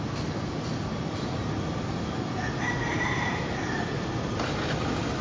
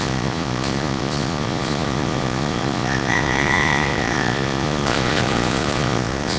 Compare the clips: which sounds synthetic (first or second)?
second